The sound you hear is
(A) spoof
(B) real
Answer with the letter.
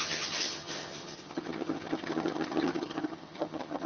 A